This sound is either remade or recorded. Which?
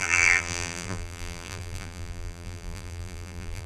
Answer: remade